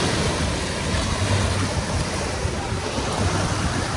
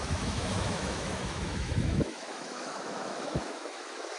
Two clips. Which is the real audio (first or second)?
first